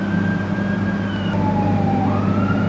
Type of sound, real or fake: real